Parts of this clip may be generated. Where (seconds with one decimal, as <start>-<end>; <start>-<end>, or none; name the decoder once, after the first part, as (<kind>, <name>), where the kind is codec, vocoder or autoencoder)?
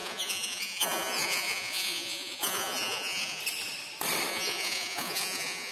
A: 0.0-3.4 (vocoder, Vocos); 4.3-5.7